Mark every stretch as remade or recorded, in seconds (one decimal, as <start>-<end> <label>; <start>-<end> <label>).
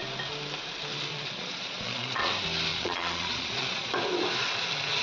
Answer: 0.0-1.1 recorded; 1.1-2.3 remade; 2.3-2.7 recorded; 2.7-3.9 remade; 3.9-5.0 recorded